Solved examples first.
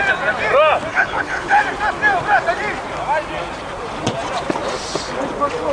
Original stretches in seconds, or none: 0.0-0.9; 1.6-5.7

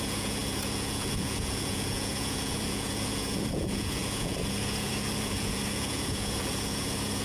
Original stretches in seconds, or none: none

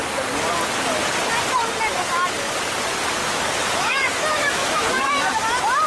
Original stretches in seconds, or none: 0.0-3.2; 5.3-5.9

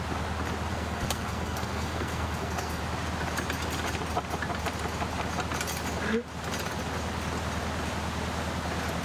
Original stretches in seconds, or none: 0.0-0.7; 2.8-9.0

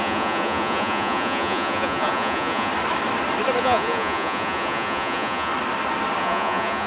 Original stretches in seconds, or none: 2.7-3.6; 5.5-6.2

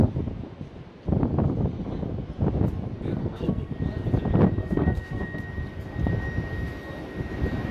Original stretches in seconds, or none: 0.0-3.2; 3.7-4.6; 5.4-7.7

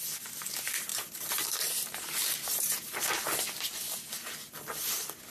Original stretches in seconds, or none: 0.0-0.9; 3.1-5.3

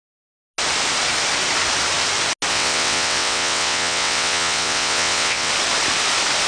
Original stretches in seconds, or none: 0.0-2.5; 5.5-6.5